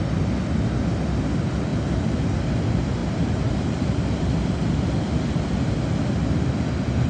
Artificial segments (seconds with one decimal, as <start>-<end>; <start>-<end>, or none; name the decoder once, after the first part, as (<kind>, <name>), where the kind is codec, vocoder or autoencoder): 1.7-2.4 (vocoder, BigVGAN v2); 3.0-4.2